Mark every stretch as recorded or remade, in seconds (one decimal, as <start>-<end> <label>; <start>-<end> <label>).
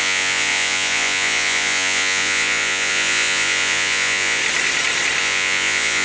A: 0.0-4.4 remade; 4.4-5.2 recorded; 5.2-6.0 remade